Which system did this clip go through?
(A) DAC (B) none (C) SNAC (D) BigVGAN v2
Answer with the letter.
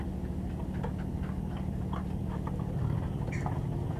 B